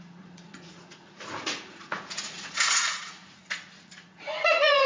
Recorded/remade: remade